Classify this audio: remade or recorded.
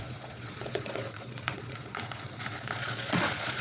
remade